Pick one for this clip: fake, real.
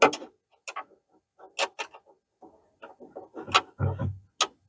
real